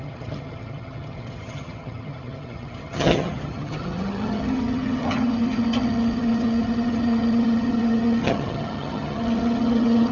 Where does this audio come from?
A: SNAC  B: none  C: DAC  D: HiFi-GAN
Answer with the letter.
D